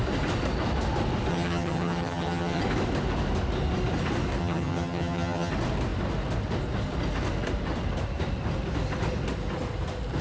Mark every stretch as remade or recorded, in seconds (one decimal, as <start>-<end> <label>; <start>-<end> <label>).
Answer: 0.0-1.3 recorded; 1.3-2.6 remade; 2.6-4.4 recorded; 4.4-5.5 remade; 5.5-10.2 recorded